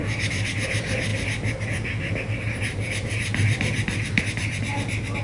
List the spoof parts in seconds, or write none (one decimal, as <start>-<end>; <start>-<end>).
none